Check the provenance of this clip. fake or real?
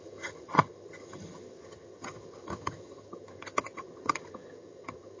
fake